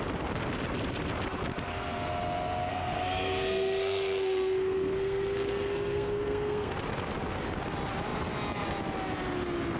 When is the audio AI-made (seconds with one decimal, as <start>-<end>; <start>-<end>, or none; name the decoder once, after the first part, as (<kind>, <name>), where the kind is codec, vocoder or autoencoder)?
2.7-6.7 (codec, SNAC)